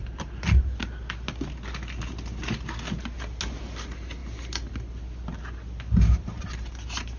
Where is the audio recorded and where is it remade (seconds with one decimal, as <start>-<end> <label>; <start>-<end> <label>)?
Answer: 0.0-7.2 recorded